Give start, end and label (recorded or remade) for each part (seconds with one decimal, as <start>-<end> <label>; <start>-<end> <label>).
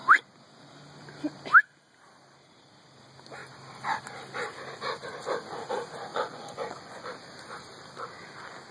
0.0-6.1 recorded; 6.1-7.1 remade; 7.1-8.7 recorded